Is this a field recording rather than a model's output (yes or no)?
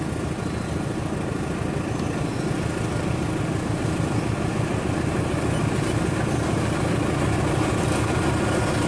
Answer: yes